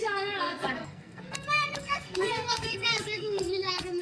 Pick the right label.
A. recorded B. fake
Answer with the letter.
B